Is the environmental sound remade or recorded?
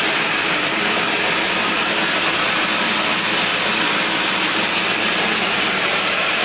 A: recorded